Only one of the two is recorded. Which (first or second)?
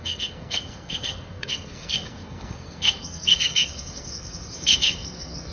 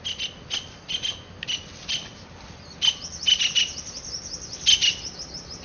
second